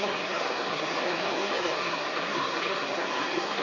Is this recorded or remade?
remade